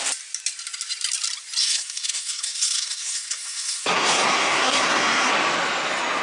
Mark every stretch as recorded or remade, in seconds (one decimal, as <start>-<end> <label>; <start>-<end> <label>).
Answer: 0.0-1.6 recorded; 1.6-5.3 remade; 5.3-6.2 recorded